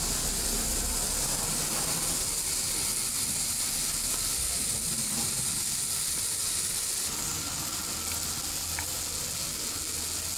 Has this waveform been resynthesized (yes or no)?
no